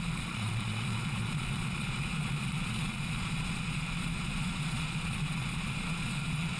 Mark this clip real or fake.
fake